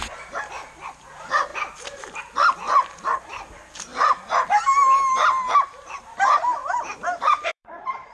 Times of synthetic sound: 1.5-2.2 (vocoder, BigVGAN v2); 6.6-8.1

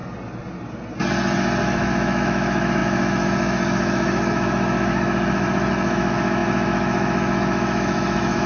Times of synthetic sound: 1.6-8.5 (autoencoder, DAC-VAE)